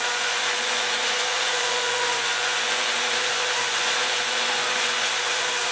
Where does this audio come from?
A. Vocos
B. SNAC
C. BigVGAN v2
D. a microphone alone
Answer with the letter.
A